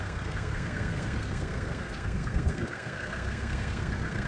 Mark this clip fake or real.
fake